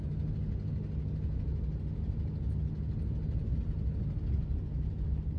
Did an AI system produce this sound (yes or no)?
no